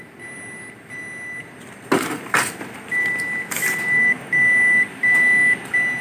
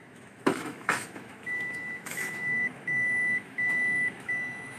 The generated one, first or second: second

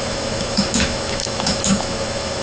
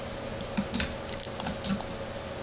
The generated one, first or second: first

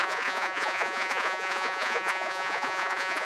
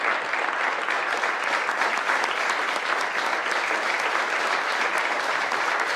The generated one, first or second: first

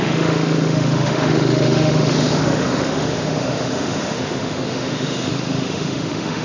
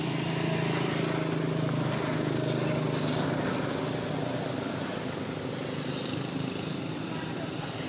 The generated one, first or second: first